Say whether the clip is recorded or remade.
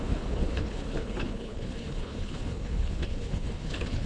remade